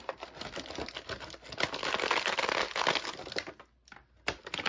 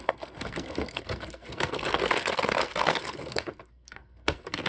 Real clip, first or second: first